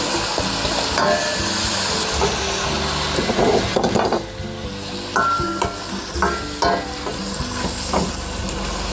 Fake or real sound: real